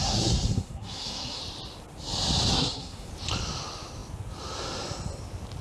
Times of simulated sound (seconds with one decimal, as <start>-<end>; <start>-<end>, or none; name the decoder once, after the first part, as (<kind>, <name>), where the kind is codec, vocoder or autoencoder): 0.0-1.4 (codec, SNAC); 2.5-3.1